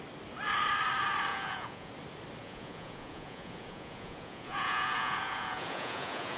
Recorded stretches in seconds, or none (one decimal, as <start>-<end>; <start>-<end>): 0.0-1.3; 1.9-2.4

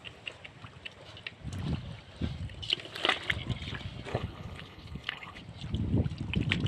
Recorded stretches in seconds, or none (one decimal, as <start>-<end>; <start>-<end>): 0.0-4.1; 5.4-6.7

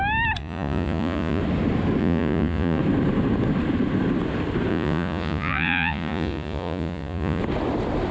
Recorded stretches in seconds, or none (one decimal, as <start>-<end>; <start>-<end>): 0.0-0.4; 1.4-2.0; 2.8-4.7; 7.4-8.1

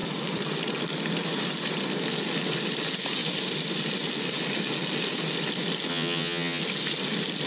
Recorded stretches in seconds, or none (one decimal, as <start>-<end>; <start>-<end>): 0.0-5.9; 6.6-7.5

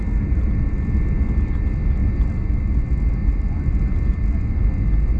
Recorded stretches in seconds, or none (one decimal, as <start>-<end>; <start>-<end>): 0.0-2.0; 2.8-3.2

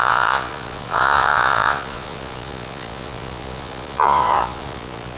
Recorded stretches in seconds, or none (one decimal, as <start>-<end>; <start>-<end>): none

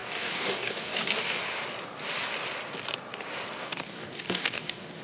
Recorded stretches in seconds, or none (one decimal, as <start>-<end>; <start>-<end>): 1.4-3.6